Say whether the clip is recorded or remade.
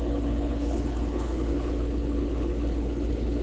remade